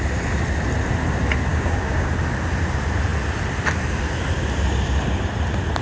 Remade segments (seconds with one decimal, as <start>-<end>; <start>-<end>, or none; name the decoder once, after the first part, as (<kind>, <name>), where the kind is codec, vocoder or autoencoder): 1.5-2.1 (codec, DAC)